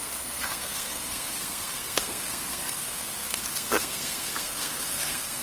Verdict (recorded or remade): remade